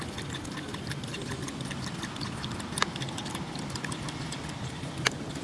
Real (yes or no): yes